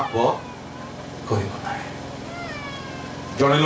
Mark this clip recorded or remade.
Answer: recorded